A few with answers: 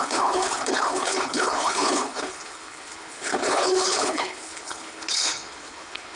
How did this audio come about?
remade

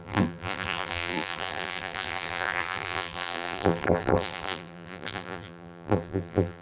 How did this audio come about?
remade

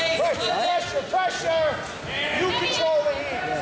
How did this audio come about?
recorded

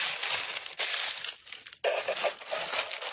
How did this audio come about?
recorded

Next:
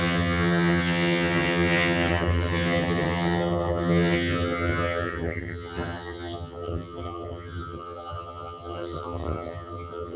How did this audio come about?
remade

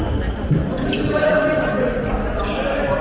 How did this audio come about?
recorded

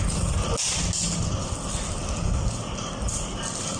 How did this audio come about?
recorded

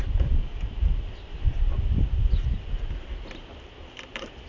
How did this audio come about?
recorded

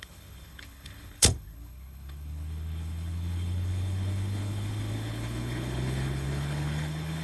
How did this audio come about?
remade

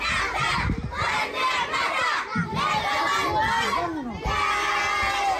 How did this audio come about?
recorded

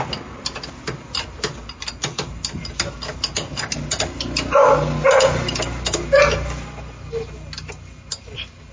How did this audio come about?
recorded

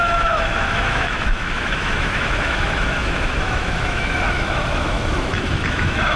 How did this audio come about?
remade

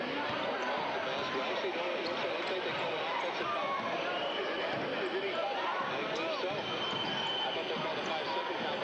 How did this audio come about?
recorded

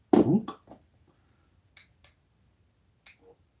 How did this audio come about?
recorded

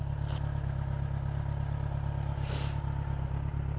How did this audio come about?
recorded